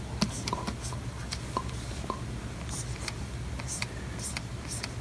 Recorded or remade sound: recorded